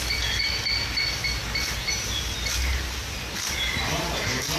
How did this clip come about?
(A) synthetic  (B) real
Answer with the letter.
B